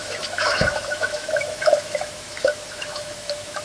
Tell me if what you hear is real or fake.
fake